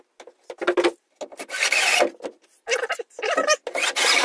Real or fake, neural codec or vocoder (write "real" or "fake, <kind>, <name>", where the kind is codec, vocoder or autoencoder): real